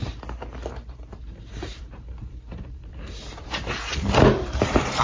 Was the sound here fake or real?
fake